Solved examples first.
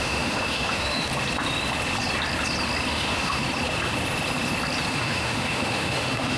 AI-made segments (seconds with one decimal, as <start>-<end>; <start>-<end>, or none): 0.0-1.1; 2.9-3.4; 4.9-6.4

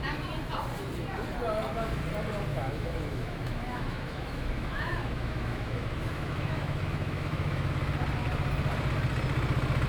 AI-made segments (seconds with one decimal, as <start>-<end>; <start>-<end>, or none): 2.5-7.7

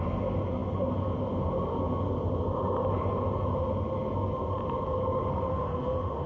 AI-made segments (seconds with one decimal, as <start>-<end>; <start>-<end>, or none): 5.5-6.3